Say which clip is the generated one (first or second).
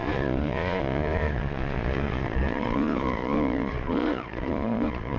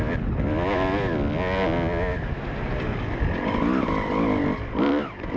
first